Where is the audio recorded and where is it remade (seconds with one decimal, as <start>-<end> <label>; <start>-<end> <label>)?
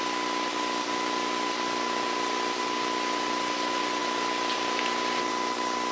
0.0-5.9 recorded